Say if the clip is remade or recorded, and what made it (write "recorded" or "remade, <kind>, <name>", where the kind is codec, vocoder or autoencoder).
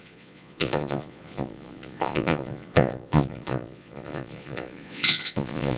remade, vocoder, Vocos